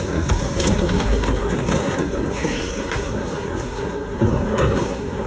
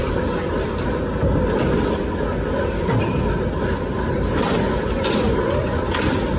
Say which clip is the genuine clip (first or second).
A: second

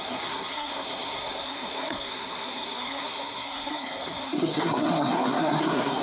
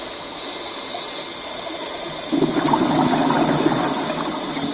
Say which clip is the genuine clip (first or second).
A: second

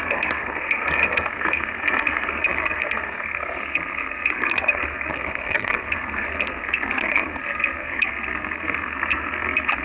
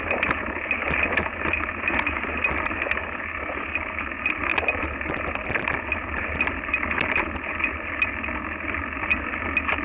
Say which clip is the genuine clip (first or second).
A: second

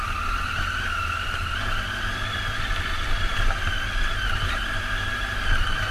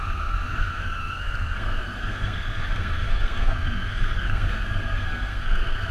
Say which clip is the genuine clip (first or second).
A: first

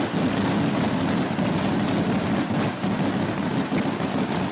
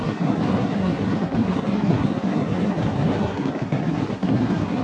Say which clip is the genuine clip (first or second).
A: first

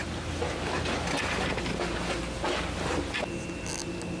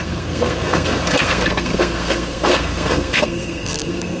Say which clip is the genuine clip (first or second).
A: first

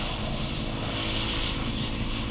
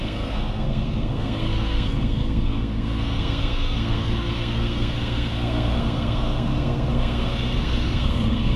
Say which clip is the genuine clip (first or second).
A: first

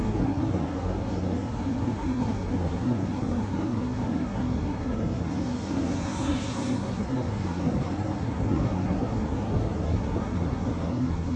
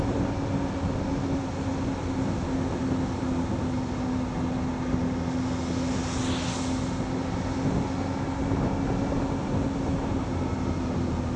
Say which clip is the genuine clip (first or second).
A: second